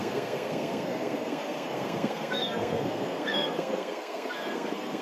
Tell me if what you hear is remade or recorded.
remade